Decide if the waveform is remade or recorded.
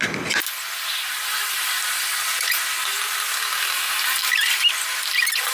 recorded